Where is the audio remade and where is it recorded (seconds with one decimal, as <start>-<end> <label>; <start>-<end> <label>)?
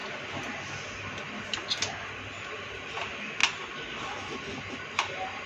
0.0-5.5 recorded